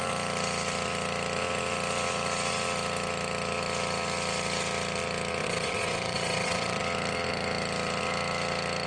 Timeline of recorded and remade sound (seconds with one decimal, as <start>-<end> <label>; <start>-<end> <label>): 0.0-5.4 recorded; 5.4-6.8 remade; 6.8-8.9 recorded